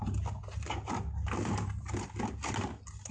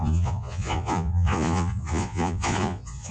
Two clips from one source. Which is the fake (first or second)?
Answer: second